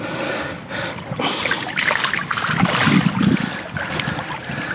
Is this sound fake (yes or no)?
yes